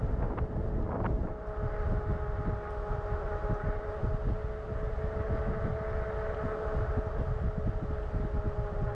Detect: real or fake real